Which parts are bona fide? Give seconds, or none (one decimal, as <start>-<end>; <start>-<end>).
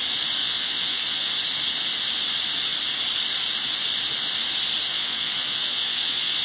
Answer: 0.0-0.4; 1.3-4.9